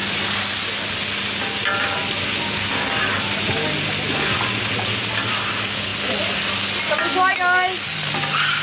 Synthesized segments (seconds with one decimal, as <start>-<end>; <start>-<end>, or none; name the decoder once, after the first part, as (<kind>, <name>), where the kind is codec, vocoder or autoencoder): none